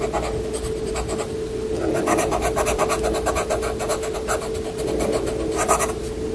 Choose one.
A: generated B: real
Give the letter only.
B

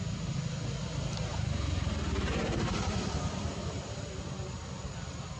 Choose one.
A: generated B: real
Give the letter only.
B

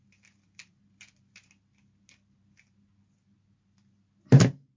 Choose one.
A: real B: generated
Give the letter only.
A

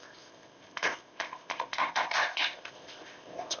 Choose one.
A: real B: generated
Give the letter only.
B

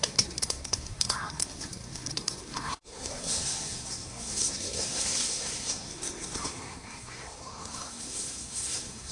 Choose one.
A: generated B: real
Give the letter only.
A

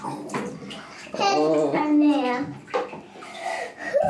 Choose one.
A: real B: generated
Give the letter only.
A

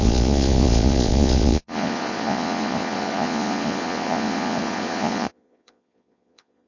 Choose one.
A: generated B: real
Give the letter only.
A